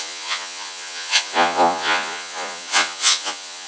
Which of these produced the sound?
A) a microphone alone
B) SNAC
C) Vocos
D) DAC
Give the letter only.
C